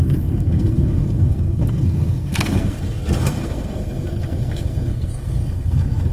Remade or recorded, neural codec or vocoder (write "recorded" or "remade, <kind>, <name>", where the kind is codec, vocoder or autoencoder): remade, codec, SNAC